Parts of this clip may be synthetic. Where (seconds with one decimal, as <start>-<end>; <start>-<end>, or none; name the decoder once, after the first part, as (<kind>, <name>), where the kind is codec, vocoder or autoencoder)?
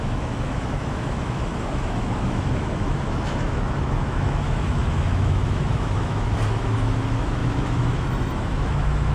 0.0-9.1 (autoencoder, DAC-VAE)